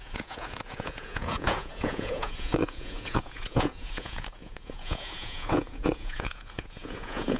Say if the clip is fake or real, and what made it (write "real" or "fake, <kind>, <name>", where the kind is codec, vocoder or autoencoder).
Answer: fake, vocoder, Vocos